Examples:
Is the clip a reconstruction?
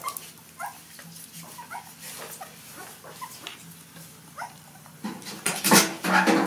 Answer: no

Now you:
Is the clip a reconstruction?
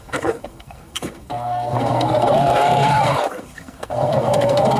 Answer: yes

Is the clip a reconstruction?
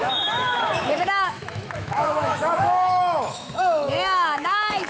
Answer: yes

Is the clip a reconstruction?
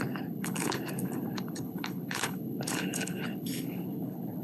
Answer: yes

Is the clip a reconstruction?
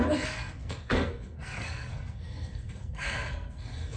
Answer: yes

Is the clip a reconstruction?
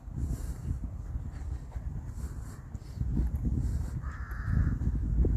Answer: no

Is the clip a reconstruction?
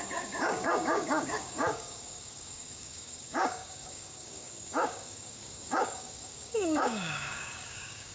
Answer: yes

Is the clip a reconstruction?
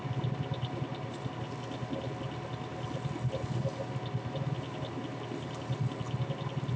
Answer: no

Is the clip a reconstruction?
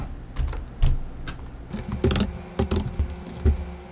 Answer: no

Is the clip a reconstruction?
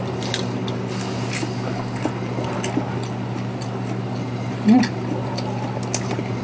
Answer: no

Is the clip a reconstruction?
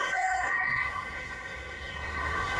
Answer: yes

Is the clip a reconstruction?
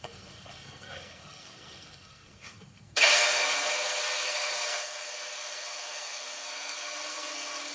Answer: yes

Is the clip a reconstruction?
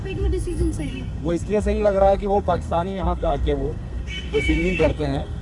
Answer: yes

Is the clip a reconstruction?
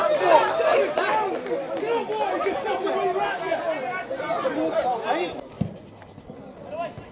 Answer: no